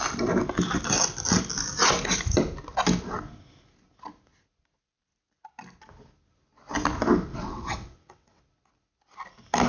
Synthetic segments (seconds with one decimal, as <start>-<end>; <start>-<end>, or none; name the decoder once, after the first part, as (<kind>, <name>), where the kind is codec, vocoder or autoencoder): 7.3-8.4 (vocoder, WaveNeXt)